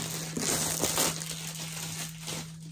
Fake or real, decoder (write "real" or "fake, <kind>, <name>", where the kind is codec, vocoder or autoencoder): real